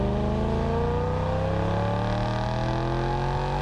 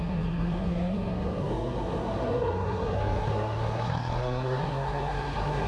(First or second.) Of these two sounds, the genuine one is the first